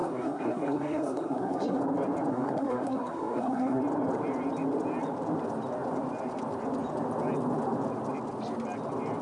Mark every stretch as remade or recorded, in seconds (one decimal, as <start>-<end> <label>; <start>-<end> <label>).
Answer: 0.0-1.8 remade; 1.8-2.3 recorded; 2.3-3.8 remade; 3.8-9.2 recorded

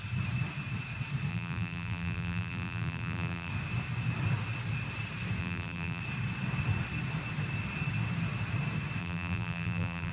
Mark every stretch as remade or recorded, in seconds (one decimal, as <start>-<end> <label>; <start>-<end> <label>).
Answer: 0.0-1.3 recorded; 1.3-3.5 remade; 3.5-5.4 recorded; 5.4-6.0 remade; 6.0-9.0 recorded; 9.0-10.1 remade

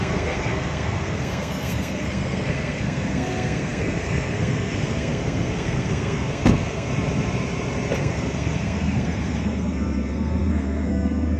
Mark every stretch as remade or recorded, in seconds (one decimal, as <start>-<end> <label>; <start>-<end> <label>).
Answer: 0.0-6.9 remade; 6.9-8.0 recorded; 8.0-11.4 remade

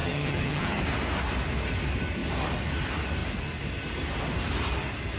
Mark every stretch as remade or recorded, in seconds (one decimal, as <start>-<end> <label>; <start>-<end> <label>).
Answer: 0.0-0.8 remade; 0.8-5.2 recorded

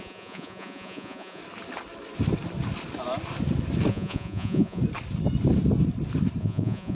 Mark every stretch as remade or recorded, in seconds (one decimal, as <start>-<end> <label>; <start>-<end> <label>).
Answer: 0.0-1.4 remade; 1.4-3.9 recorded; 3.9-4.8 remade; 4.8-6.4 recorded; 6.4-6.9 remade

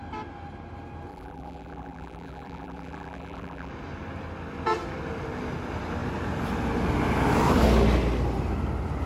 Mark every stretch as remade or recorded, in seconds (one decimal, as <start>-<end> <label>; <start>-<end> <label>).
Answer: 0.0-1.1 recorded; 1.1-3.7 remade; 3.7-9.1 recorded

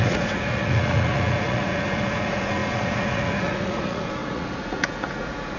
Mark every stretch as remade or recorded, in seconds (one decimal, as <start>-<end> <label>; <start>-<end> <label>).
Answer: 0.0-5.6 remade